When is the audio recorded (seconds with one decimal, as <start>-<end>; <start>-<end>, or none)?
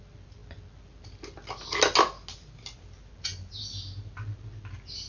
0.0-5.1